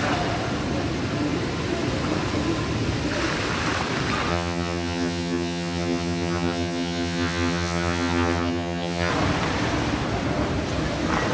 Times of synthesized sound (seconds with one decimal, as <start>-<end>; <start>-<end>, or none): 4.3-9.1